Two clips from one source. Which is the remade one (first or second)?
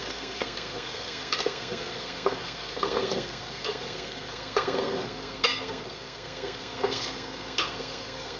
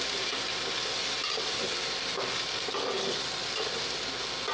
first